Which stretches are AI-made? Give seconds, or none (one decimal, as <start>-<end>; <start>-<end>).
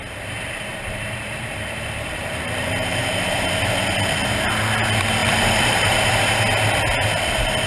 0.7-3.6; 5.2-6.0